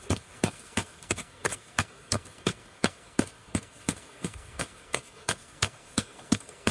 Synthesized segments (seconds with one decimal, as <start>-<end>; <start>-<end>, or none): 0.0-6.7